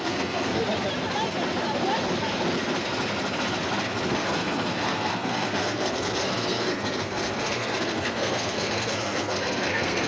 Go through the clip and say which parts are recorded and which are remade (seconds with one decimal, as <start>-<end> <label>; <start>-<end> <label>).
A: 0.0-0.6 remade; 0.6-4.1 recorded; 4.1-10.1 remade